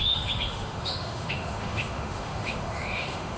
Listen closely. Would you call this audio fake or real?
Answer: fake